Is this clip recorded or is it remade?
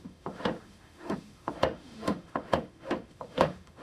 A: remade